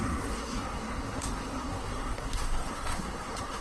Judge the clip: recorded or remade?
remade